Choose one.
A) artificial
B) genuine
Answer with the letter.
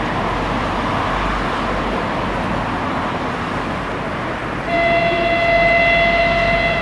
B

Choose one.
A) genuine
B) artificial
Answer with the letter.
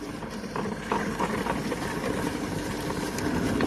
B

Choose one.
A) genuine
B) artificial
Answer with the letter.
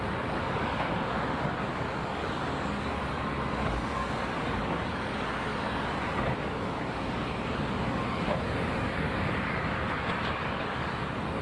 B